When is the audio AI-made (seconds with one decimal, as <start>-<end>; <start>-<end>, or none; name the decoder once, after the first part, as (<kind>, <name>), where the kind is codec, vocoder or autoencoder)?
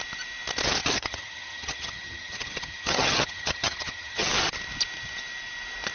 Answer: 0.8-4.3 (vocoder, HiFi-GAN)